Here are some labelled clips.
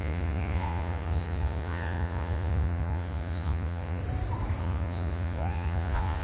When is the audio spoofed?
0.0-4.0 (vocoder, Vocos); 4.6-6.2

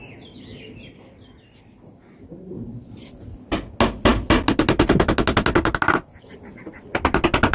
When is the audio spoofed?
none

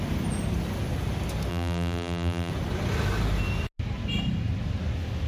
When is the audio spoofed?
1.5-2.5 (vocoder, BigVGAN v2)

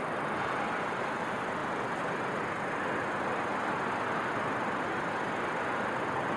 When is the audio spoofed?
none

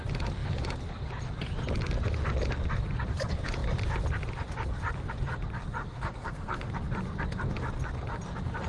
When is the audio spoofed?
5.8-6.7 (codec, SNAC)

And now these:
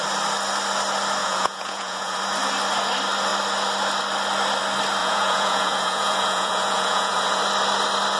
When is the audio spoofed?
1.2-2.2 (vocoder, Vocos); 5.0-7.4